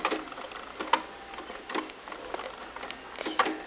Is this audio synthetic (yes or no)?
no